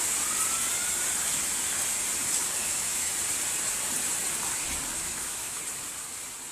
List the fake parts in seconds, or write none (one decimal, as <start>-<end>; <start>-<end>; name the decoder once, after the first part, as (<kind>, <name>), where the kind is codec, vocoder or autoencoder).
2.6-3.1 (autoencoder, DAC-VAE); 4.9-5.6

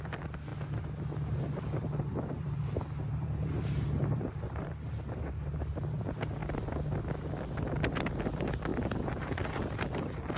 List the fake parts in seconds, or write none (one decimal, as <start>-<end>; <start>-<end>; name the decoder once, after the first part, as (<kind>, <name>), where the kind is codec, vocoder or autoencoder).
2.1-5.9 (vocoder, BigVGAN v2); 8.7-10.4

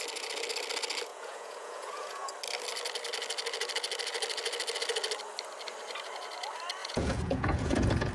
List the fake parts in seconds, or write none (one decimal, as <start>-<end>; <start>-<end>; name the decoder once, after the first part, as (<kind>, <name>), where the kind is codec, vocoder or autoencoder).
1.1-2.3 (vocoder, Vocos); 6.8-8.1

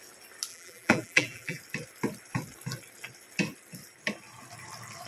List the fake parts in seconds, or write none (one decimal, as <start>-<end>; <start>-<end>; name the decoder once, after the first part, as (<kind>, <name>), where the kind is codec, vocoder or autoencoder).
0.5-1.6 (vocoder, BigVGAN v2)

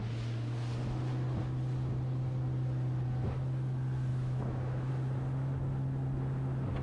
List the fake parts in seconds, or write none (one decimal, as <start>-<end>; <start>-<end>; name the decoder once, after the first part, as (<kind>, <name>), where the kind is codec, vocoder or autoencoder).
4.1-4.9 (autoencoder, DAC-VAE)

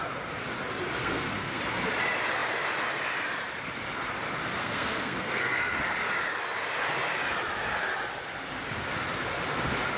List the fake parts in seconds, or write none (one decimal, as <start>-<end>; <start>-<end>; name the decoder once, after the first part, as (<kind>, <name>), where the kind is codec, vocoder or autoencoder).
1.0-1.6 (codec, SNAC); 4.6-5.8

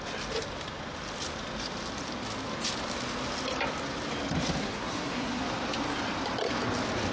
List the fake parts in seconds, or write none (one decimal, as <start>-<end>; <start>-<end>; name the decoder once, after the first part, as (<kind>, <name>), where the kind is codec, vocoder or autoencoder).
4.6-5.4 (codec, SNAC)